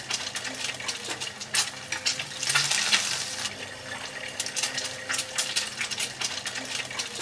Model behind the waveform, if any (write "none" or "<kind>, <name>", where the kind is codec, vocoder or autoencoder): none